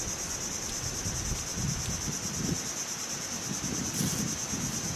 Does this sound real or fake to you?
real